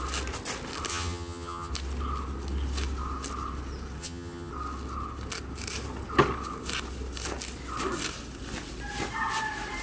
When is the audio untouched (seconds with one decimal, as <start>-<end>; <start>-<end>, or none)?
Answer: 0.0-0.9; 1.7-4.0; 4.5-9.8